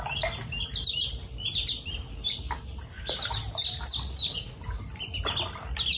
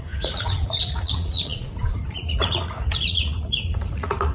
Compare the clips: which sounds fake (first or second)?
second